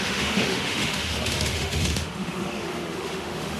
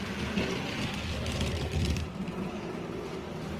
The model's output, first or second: first